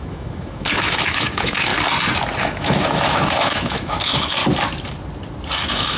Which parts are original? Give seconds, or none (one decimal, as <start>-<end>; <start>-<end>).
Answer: 1.7-2.4; 4.4-5.6